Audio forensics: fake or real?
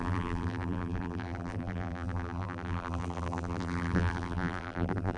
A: fake